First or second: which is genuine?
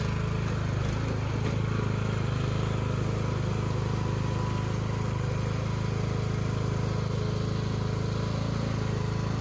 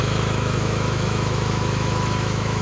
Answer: first